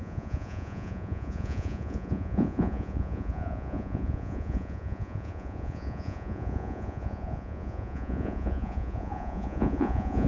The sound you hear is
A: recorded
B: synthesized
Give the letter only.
B